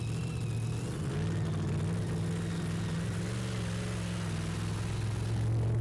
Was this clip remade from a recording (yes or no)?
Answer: no